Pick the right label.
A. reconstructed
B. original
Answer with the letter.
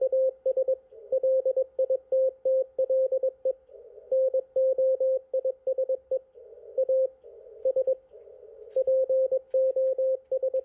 B